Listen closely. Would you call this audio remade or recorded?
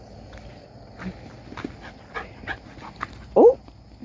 recorded